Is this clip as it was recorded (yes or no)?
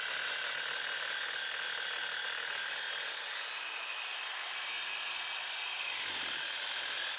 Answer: yes